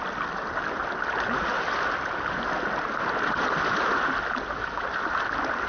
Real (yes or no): yes